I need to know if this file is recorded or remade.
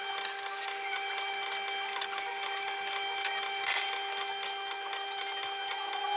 recorded